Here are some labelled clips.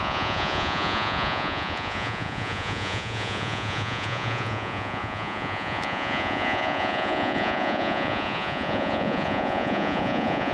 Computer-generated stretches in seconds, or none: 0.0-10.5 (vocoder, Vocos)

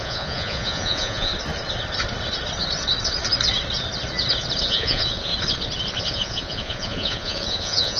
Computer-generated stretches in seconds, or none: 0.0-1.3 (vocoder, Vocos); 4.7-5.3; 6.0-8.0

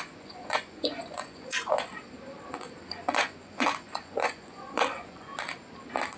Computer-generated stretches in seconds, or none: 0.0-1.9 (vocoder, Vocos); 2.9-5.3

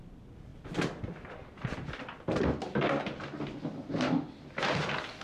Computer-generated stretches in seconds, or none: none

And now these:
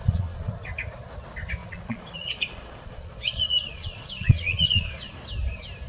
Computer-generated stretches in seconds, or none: 0.0-0.5 (vocoder, Vocos); 1.6-5.1

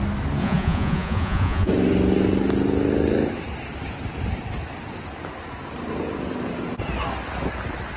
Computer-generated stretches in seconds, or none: 0.4-1.7 (vocoder, Vocos)

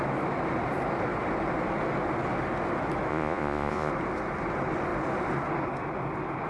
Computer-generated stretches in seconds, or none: 3.1-3.9 (vocoder, Vocos)